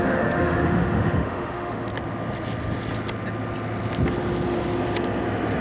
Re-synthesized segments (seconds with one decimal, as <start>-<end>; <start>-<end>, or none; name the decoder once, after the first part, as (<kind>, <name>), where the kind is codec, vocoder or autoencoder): 0.0-1.9 (autoencoder, DAC-VAE)